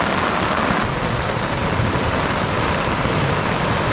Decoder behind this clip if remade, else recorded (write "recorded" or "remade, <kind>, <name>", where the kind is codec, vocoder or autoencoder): recorded